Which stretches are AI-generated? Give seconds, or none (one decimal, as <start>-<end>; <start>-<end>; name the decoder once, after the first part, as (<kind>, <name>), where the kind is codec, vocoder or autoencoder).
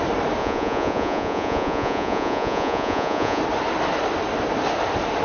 0.4-3.4 (vocoder, Vocos)